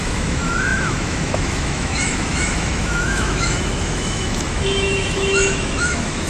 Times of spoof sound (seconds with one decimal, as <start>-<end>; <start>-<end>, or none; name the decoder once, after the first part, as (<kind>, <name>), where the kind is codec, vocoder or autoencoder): 0.0-6.3 (autoencoder, DAC-VAE)